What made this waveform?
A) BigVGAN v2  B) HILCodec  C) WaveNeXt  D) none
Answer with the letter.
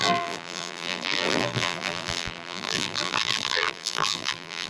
A